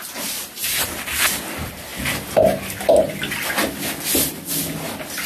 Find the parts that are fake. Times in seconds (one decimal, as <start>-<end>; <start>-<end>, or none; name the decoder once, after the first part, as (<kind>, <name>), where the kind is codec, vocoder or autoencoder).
none